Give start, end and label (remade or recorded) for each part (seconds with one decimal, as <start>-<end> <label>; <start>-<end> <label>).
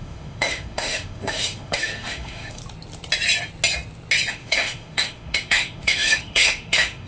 0.0-2.6 remade; 2.6-4.3 recorded; 4.3-7.1 remade